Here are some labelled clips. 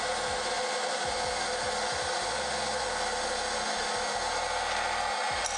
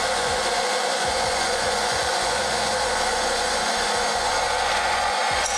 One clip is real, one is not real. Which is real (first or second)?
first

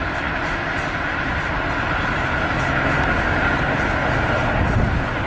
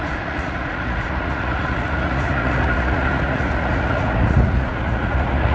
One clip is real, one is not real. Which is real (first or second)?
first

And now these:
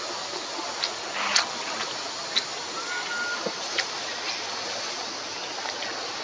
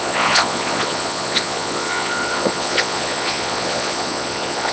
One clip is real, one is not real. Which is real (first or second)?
first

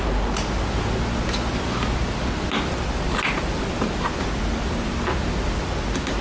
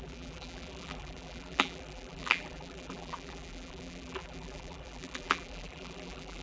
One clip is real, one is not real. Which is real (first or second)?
first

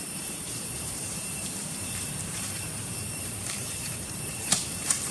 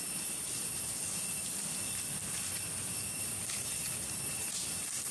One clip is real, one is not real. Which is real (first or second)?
second